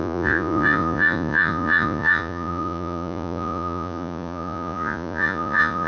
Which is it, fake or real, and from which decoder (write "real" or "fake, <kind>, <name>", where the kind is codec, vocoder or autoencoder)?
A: fake, vocoder, Vocos